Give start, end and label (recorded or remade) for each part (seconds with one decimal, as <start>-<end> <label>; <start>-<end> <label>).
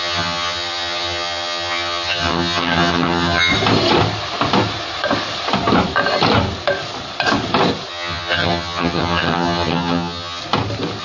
0.0-3.5 remade; 3.5-7.9 recorded; 7.9-10.4 remade; 10.4-11.0 recorded